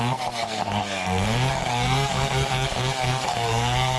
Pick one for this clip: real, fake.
fake